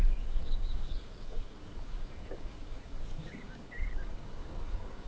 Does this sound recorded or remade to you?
remade